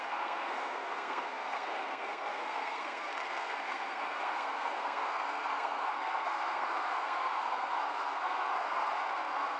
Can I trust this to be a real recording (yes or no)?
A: no